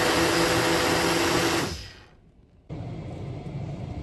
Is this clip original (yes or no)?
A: yes